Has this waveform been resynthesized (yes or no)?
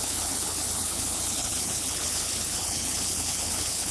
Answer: yes